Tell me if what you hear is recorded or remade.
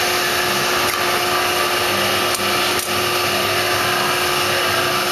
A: recorded